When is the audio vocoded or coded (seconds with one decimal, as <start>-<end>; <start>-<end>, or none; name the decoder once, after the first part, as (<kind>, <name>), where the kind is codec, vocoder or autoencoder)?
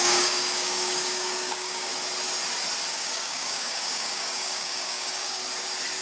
0.0-1.9 (codec, DAC); 2.9-5.4